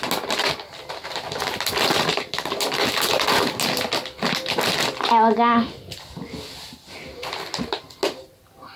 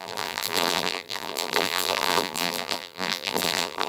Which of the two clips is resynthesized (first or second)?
second